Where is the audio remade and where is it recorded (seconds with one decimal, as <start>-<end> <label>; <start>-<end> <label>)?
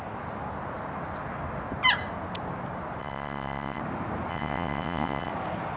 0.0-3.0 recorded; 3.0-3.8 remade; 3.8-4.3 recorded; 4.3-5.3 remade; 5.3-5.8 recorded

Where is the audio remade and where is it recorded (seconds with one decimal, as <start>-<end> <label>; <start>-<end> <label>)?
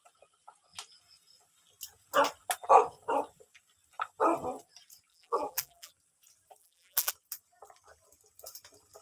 0.0-5.1 recorded; 5.1-5.9 remade; 5.9-6.6 recorded; 6.6-7.1 remade; 7.1-9.0 recorded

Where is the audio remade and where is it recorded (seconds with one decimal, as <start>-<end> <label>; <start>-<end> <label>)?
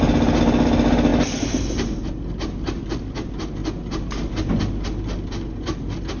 0.0-6.2 recorded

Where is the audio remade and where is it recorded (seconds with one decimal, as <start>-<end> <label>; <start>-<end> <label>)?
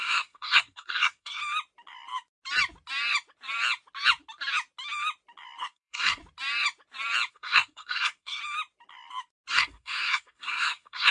0.0-1.4 remade; 1.4-5.6 recorded; 5.6-6.2 remade; 6.2-7.3 recorded; 7.3-8.4 remade; 8.4-9.5 recorded; 9.5-11.1 remade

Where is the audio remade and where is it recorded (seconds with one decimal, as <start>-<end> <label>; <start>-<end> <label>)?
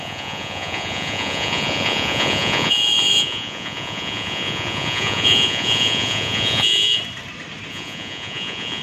0.0-7.0 remade; 7.0-7.7 recorded; 7.7-8.8 remade